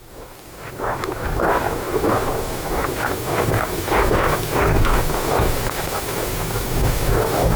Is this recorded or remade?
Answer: remade